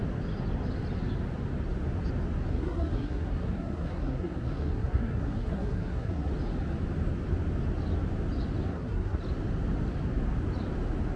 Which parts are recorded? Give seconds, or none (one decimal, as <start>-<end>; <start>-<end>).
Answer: 0.0-2.5; 6.3-8.7; 9.2-11.2

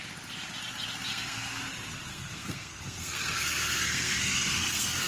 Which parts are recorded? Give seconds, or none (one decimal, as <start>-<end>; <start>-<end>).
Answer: 0.0-1.1; 1.6-2.1

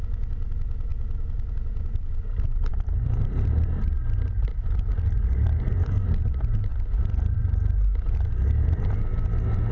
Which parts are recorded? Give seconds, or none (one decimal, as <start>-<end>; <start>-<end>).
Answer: 0.0-2.7; 5.9-6.7; 8.9-9.7

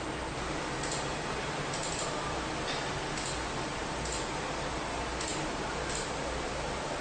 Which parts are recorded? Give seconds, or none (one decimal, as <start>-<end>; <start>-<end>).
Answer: 5.1-5.9

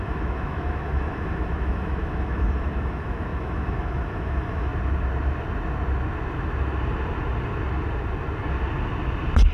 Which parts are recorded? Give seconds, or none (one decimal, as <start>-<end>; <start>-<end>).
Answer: 4.7-9.5